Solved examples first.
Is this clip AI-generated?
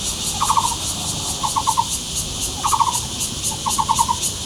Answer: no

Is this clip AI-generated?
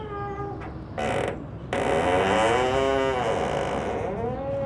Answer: no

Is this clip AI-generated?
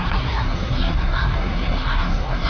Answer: yes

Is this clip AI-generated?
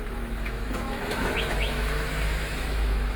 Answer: yes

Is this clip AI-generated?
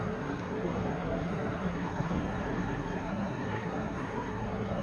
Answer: yes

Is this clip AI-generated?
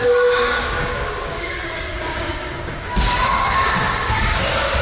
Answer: yes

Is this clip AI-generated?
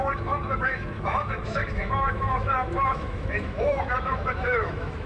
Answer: yes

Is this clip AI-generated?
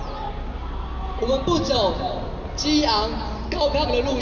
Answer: no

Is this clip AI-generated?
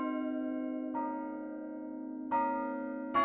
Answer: no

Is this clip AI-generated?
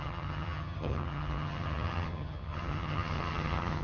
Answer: yes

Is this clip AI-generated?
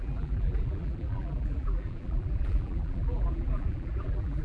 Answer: yes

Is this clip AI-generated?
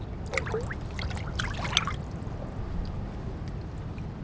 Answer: no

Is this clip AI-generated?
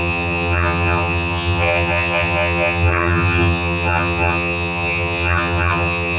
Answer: yes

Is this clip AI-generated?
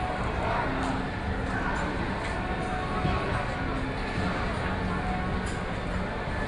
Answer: no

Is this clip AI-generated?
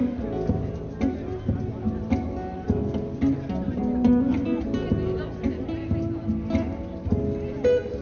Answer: no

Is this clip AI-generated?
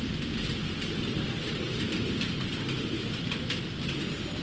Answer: no